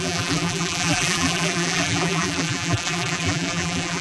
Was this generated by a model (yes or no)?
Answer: yes